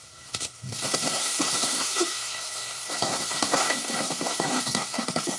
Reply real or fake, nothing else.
fake